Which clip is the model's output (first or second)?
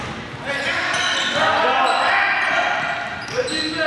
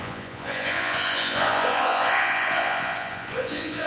second